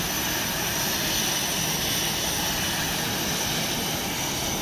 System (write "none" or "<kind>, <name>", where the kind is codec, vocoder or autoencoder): none